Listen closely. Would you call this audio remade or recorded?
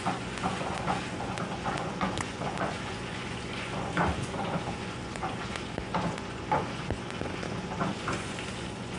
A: remade